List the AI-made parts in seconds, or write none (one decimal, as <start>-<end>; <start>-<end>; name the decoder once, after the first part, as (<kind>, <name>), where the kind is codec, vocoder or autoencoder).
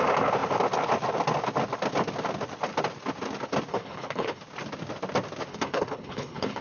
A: 3.7-4.4 (codec, HILCodec); 5.5-6.6